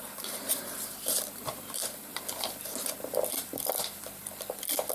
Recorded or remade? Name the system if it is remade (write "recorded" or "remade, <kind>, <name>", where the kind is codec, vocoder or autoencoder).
remade, vocoder, BigVGAN v2